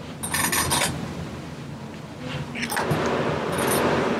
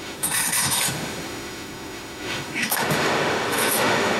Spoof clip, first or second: second